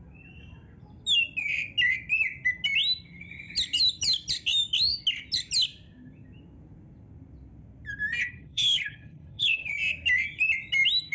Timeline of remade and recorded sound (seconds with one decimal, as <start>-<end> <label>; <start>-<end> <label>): 0.0-8.2 recorded; 8.2-9.7 remade; 9.7-11.1 recorded